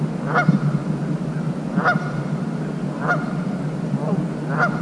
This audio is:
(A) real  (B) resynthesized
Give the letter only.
A